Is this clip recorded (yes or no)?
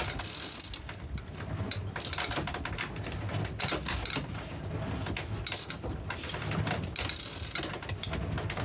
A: yes